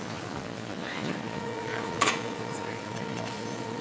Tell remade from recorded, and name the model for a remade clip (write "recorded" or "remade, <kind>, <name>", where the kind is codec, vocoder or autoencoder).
remade, vocoder, Vocos